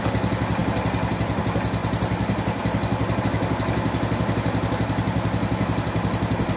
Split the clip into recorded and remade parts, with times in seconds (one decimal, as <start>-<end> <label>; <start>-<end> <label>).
0.0-6.6 recorded